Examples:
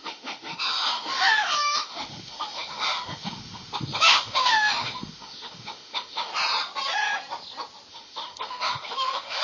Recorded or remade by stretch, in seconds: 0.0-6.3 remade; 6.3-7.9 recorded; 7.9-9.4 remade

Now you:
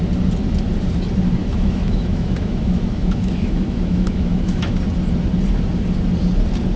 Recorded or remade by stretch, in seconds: 0.0-1.4 recorded; 1.4-4.8 remade; 4.8-6.8 recorded

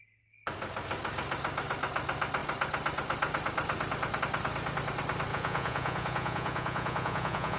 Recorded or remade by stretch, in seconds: 0.0-5.3 recorded; 5.3-7.6 remade

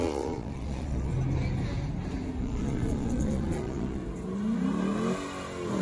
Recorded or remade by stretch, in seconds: 0.0-1.1 remade; 1.1-2.4 recorded; 2.4-4.0 remade; 4.0-5.8 recorded

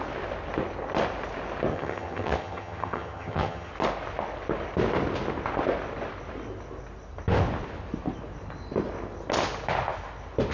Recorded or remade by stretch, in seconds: 0.0-1.7 recorded; 1.7-3.7 remade; 3.7-10.5 recorded

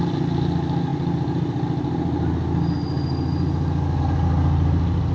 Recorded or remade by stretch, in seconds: 0.0-5.1 recorded